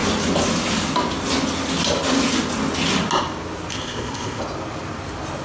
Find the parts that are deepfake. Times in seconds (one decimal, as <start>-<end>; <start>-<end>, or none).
3.7-4.4